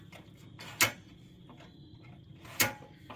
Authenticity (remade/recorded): recorded